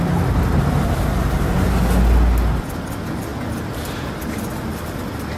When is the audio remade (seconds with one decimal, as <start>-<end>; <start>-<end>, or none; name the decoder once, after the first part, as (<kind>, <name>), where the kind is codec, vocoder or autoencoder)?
none